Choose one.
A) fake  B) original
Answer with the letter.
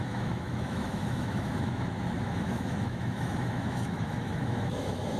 A